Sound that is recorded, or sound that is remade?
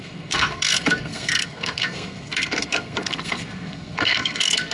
remade